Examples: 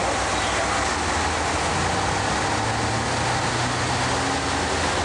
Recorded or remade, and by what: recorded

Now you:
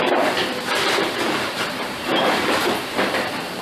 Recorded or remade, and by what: remade, vocoder, BigVGAN v2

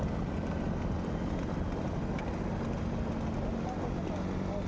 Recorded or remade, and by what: recorded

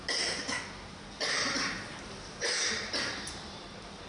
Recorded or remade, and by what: remade, vocoder, BigVGAN v2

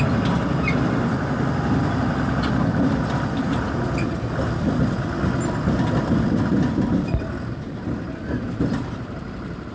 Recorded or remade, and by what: recorded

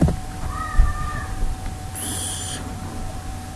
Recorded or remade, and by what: remade, vocoder, BigVGAN v2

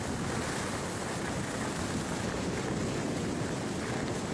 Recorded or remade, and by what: recorded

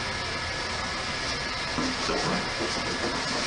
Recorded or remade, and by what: recorded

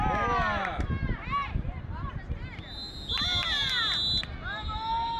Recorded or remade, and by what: recorded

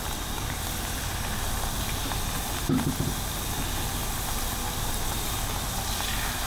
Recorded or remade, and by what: recorded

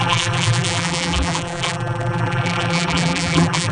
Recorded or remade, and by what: remade, vocoder, BigVGAN v2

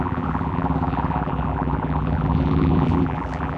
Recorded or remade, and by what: remade, vocoder, BigVGAN v2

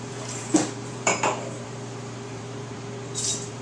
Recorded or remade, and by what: remade, vocoder, BigVGAN v2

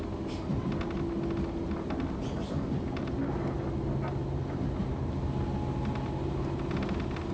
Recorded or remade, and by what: recorded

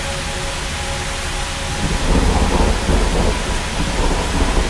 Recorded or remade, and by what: recorded